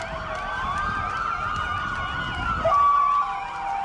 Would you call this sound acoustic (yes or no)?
yes